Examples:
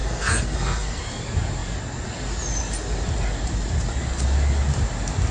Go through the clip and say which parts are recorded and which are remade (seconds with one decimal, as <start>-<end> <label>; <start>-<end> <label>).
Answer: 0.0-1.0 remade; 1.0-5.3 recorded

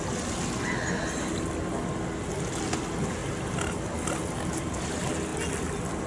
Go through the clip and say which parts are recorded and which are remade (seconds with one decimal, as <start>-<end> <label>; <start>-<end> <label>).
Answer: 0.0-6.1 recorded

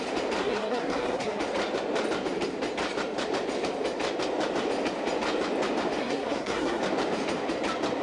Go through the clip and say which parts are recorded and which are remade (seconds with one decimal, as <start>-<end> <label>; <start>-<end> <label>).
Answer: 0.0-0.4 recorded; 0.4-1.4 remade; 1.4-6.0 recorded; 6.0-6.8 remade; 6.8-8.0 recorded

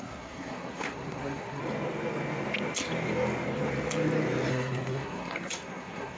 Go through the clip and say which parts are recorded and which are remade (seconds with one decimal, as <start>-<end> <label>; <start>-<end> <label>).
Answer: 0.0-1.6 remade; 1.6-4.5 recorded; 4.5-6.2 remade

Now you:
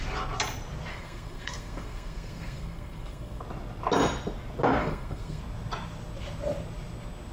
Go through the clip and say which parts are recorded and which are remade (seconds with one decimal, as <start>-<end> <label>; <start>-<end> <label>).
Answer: 0.0-0.9 recorded; 0.9-3.4 remade; 3.4-4.8 recorded; 4.8-5.4 remade; 5.4-7.3 recorded

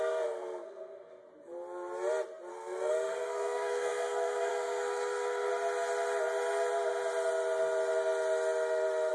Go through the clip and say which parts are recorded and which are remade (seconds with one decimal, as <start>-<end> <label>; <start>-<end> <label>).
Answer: 0.0-1.2 remade; 1.2-2.5 recorded; 2.5-5.5 remade; 5.5-9.1 recorded